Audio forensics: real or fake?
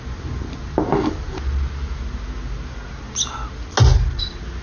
real